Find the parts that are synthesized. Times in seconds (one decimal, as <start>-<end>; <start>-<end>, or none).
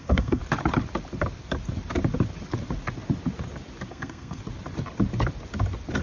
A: 0.0-0.4; 3.9-4.4